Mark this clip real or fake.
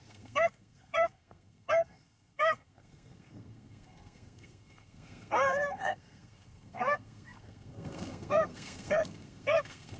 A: fake